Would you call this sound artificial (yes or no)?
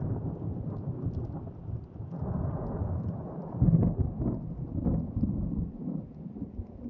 no